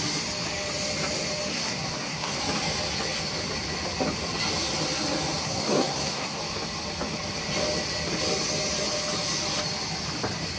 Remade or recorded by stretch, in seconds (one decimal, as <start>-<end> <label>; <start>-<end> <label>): 0.0-1.5 recorded; 1.5-2.4 remade; 2.4-5.4 recorded; 5.4-6.4 remade; 6.4-10.6 recorded